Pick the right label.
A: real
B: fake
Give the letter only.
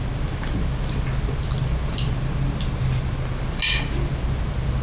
A